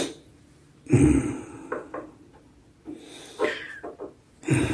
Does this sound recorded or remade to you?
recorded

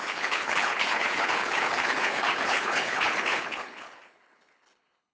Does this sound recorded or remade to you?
remade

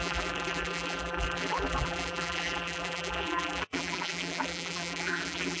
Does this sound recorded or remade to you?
remade